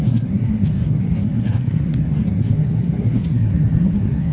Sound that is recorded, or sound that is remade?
remade